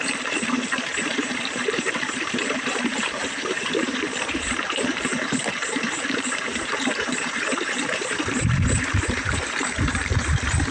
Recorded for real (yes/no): no